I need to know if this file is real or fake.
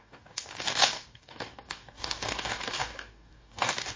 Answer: fake